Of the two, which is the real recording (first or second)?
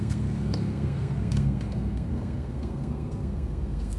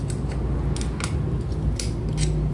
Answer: second